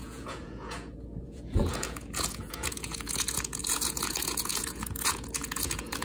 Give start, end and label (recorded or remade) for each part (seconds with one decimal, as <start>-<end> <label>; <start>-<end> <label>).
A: 0.0-6.0 remade